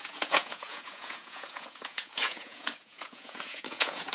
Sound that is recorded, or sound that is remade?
remade